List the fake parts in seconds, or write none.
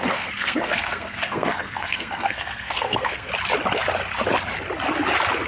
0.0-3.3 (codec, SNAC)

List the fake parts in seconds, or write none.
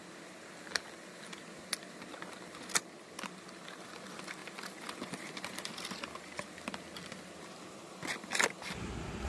none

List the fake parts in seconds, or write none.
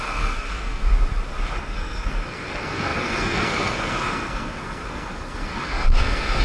0.0-0.8 (codec, SNAC); 1.6-6.4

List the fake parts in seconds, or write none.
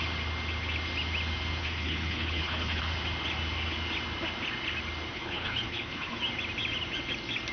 1.6-2.8 (codec, HILCodec); 5.1-6.2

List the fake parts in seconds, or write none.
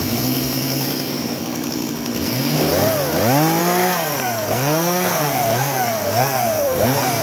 0.0-2.7 (codec, SNAC); 3.6-7.2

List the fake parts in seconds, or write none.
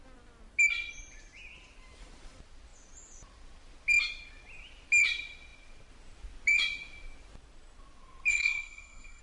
8.3-9.2 (codec, SNAC)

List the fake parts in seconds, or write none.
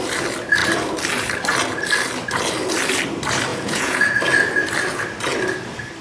3.5-4.2 (vocoder, Vocos)